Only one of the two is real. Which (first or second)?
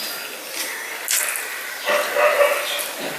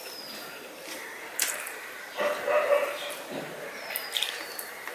first